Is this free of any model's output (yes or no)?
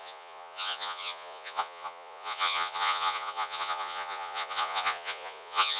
no